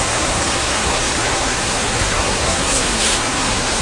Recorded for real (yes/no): no